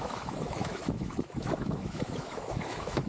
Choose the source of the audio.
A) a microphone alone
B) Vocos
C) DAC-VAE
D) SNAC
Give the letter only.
C